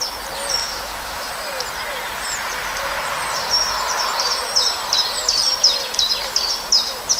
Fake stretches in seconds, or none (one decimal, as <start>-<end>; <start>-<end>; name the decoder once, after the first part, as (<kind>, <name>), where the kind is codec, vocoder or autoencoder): 0.6-1.3 (autoencoder, DAC-VAE)